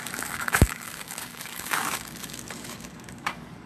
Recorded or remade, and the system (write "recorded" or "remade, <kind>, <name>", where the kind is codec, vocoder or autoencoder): remade, codec, DAC